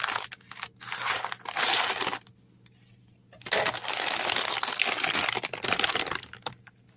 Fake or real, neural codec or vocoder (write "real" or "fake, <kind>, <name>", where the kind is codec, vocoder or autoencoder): real